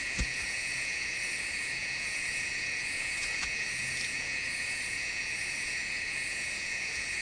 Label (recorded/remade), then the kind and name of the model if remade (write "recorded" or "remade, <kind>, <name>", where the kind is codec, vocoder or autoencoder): remade, vocoder, Vocos